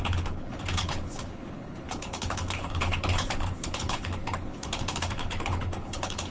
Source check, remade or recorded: remade